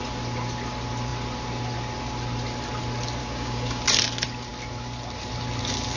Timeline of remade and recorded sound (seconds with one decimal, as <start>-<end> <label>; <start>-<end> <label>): 0.0-3.2 recorded; 3.2-3.8 remade; 3.8-6.0 recorded